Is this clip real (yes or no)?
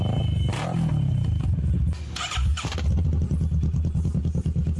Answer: yes